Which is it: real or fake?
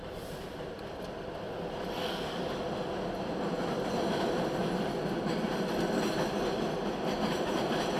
real